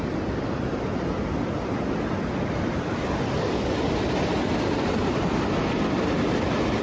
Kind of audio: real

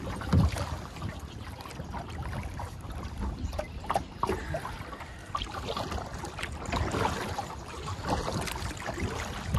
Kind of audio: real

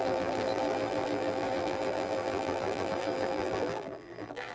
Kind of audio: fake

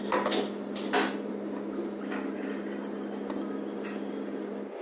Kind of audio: real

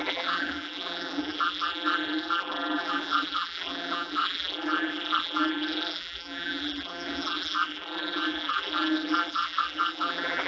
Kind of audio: fake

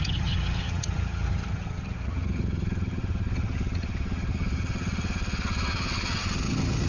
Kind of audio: fake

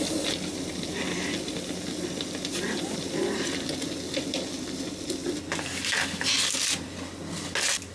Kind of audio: real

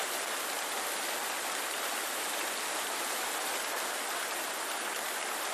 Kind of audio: real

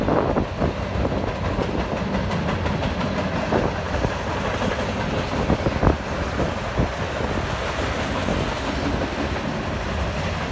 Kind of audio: real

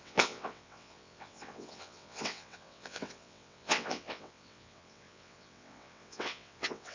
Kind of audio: fake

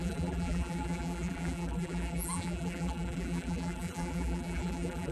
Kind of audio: fake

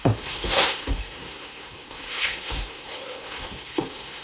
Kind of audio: fake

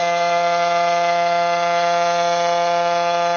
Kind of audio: fake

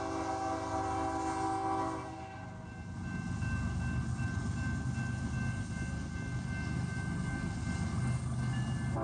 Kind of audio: real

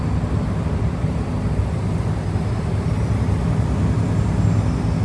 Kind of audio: real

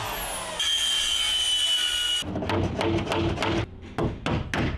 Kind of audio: real